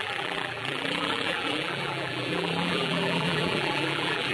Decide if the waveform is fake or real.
fake